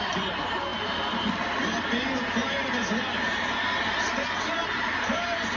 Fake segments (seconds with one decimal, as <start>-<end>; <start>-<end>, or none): none